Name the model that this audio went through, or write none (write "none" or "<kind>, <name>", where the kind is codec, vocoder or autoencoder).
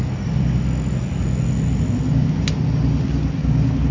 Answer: none